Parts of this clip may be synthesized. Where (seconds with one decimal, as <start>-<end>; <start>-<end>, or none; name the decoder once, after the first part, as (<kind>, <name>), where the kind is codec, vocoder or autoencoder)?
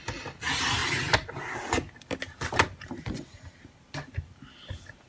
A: none